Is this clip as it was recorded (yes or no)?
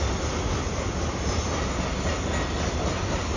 yes